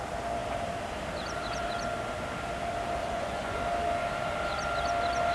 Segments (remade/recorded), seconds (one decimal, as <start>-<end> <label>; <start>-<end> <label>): 0.0-3.0 recorded; 3.0-3.6 remade; 3.6-5.3 recorded